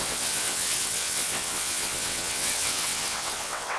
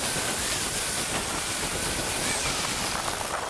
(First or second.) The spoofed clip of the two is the first